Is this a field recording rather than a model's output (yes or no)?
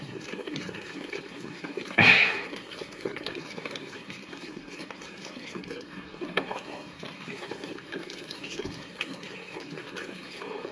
no